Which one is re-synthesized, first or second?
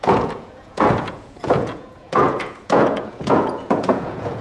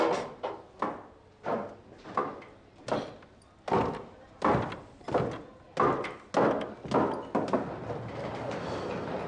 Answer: first